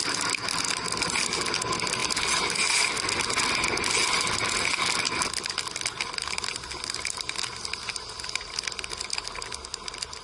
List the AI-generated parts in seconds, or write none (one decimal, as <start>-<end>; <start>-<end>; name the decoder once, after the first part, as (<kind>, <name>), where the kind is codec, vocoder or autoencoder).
none